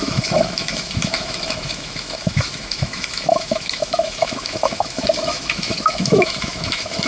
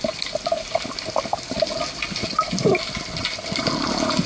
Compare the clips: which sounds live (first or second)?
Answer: second